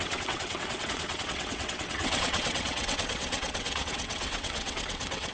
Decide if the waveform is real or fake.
fake